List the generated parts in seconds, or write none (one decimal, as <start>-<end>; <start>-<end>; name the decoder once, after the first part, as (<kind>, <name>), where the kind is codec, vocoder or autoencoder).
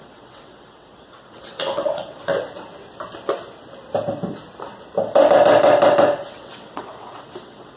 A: 0.0-2.3 (vocoder, WaveNeXt); 6.3-7.8